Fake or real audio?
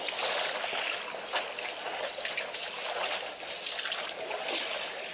real